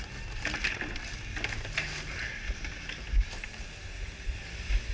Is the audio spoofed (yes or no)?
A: no